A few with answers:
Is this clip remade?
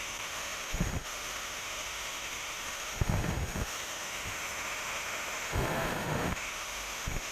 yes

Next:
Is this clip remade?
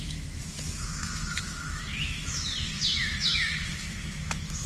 yes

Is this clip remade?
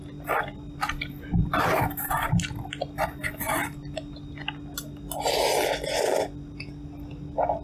no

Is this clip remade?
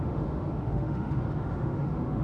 yes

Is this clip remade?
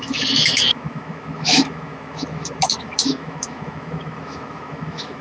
yes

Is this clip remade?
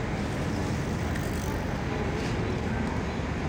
no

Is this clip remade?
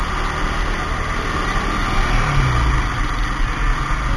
no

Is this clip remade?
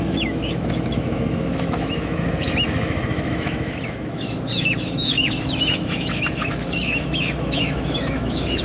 yes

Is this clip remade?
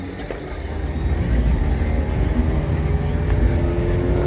no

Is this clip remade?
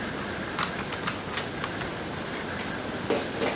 no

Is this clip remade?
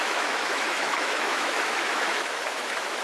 yes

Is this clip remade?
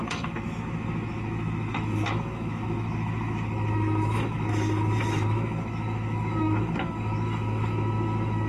yes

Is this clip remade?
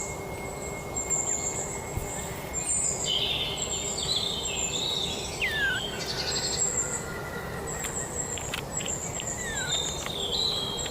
no